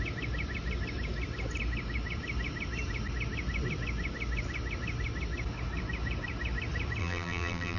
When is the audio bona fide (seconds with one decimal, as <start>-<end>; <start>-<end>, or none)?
0.0-7.0